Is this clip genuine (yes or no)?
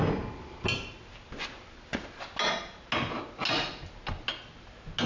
yes